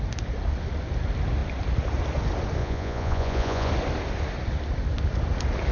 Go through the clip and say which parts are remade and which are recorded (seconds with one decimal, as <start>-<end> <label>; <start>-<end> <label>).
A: 0.0-2.6 recorded; 2.6-3.7 remade; 3.7-5.7 recorded